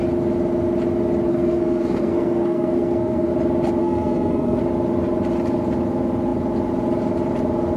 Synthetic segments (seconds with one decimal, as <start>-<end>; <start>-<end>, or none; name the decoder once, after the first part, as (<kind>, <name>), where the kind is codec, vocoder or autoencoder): 1.3-3.3 (codec, SNAC); 3.8-4.6